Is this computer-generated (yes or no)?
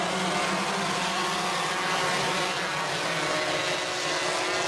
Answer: no